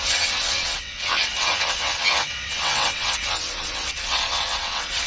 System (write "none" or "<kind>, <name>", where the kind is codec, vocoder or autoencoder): vocoder, WaveNeXt